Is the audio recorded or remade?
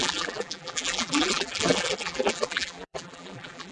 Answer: remade